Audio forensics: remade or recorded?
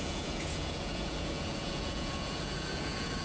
remade